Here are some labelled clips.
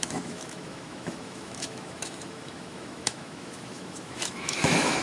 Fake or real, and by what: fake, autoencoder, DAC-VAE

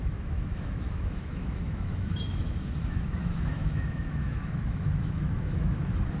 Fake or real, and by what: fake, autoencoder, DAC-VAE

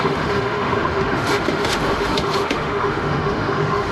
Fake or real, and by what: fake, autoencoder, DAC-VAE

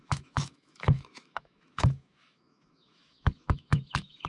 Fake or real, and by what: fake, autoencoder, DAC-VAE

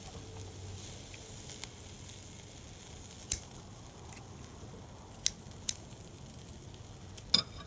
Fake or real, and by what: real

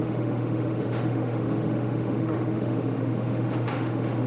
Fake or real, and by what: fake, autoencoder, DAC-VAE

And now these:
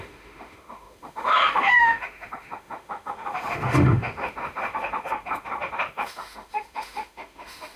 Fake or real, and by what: fake, autoencoder, DAC-VAE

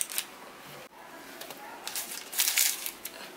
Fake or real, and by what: real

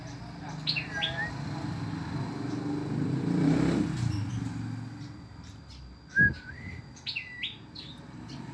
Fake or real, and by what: real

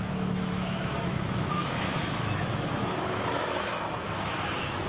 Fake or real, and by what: fake, autoencoder, DAC-VAE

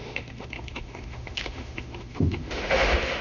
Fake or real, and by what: fake, autoencoder, DAC-VAE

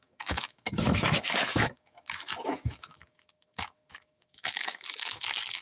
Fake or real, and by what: fake, autoencoder, DAC-VAE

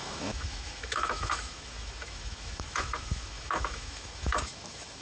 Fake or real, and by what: fake, autoencoder, DAC-VAE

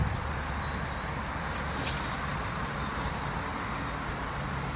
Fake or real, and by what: real